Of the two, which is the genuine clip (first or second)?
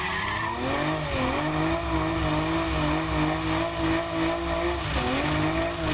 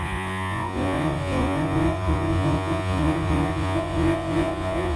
first